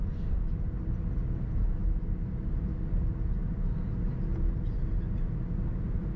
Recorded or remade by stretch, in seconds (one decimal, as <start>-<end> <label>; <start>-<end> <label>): 0.0-6.2 recorded

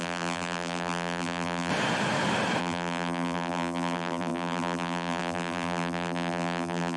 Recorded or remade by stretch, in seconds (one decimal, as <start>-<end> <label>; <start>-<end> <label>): 0.0-1.7 remade; 1.7-2.6 recorded; 2.6-7.0 remade

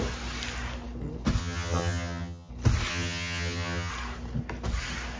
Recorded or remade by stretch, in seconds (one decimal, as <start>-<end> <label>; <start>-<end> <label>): 0.0-1.4 recorded; 1.4-2.5 remade; 2.5-2.9 recorded; 2.9-3.9 remade; 3.9-5.2 recorded

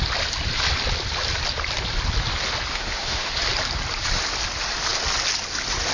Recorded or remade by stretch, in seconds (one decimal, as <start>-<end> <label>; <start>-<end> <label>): 0.0-2.7 recorded; 2.7-3.3 remade; 3.3-5.9 recorded